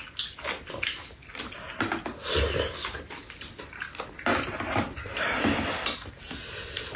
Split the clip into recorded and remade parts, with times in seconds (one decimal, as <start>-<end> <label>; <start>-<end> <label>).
0.0-2.2 recorded; 2.2-3.2 remade; 3.2-7.0 recorded